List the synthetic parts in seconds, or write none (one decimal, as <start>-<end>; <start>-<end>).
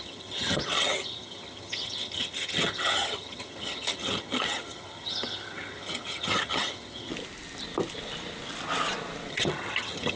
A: 0.0-7.1; 9.3-10.2